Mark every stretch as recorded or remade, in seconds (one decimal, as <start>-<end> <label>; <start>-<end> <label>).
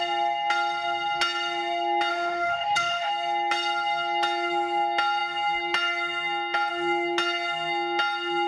0.0-2.1 recorded; 2.1-3.1 remade; 3.1-8.5 recorded